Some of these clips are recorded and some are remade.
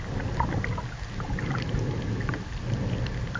recorded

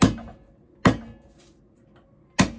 recorded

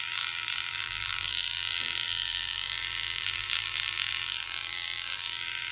remade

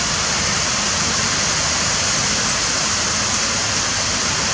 recorded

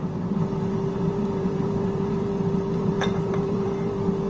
remade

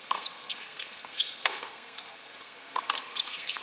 remade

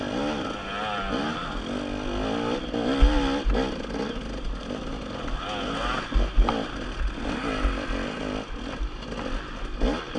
recorded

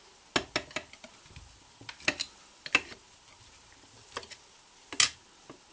recorded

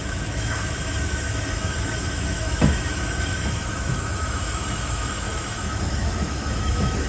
remade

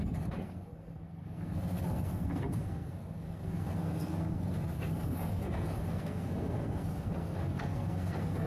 remade